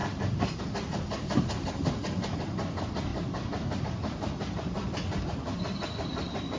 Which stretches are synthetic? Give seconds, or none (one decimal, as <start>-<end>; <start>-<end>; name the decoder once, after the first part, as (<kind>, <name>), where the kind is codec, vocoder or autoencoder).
0.0-0.6 (vocoder, BigVGAN v2)